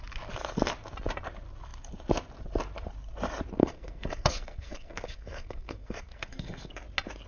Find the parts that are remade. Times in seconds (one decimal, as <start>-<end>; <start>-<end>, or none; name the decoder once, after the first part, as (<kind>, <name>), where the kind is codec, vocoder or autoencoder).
3.6-6.7 (codec, SNAC)